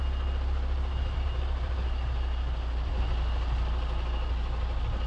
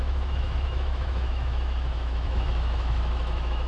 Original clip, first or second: first